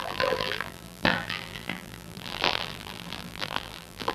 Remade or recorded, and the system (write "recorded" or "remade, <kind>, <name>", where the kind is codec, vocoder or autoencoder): remade, vocoder, BigVGAN v2